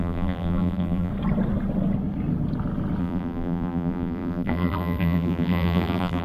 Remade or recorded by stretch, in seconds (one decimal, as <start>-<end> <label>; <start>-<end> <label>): 0.0-1.1 remade; 1.1-3.0 recorded; 3.0-6.2 remade